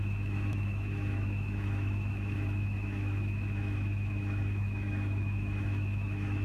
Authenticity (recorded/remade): remade